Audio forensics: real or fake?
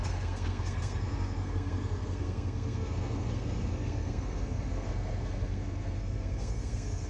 fake